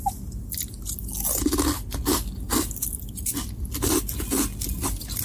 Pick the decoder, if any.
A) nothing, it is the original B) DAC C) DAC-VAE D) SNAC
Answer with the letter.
A